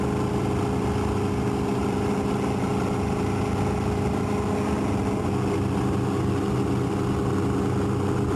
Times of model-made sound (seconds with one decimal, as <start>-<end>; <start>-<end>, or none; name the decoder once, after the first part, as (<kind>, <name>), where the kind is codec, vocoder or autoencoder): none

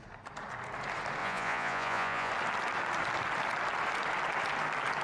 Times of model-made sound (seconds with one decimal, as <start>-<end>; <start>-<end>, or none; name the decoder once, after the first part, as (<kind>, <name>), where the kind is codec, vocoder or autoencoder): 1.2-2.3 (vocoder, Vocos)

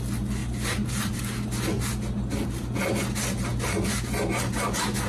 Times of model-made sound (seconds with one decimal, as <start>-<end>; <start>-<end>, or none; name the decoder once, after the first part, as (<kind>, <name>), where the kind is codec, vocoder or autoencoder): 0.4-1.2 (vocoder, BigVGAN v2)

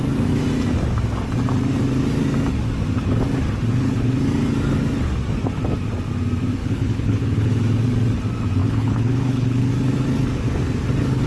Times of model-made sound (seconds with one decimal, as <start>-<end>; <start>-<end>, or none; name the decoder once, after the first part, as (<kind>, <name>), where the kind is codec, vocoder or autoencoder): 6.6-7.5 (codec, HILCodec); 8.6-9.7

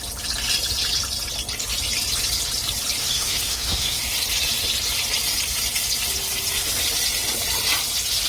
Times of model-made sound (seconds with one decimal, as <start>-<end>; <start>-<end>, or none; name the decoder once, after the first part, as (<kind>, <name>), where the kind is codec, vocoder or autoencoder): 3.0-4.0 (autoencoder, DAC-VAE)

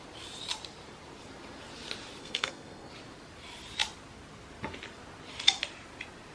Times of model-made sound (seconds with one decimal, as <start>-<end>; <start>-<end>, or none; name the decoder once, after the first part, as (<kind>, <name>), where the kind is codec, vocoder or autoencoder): 2.2-2.9 (codec, SNAC)

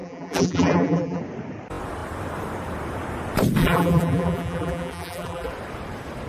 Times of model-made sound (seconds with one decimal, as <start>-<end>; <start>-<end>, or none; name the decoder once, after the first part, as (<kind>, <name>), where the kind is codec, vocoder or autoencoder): 0.0-1.2 (vocoder, BigVGAN v2); 3.6-5.5

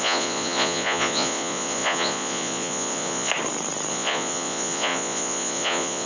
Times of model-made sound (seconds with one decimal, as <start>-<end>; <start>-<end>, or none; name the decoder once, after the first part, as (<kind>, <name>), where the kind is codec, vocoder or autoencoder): 0.0-3.3 (vocoder, Vocos); 3.9-6.1